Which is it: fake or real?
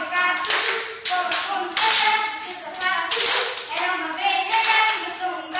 real